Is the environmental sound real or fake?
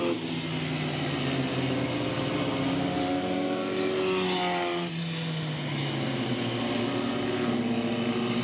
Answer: real